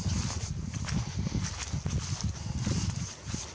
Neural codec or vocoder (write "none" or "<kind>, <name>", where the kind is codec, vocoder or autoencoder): none